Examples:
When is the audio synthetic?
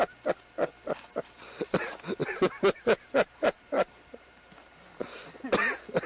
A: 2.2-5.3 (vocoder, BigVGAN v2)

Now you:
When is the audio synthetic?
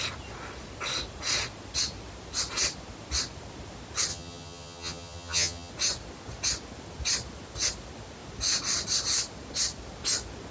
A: 4.1-5.7 (vocoder, HiFi-GAN)